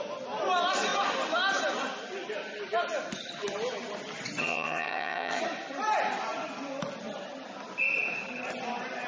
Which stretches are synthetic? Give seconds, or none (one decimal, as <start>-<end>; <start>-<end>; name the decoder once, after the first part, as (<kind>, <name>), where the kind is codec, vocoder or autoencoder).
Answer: 4.4-5.4 (vocoder, HiFi-GAN)